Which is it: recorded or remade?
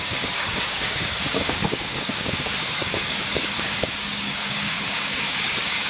remade